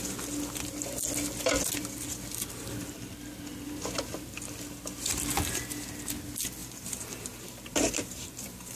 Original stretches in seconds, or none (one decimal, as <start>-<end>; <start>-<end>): 0.0-6.6